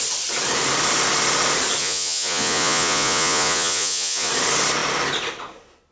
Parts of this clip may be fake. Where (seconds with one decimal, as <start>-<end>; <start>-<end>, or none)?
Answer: 1.8-4.3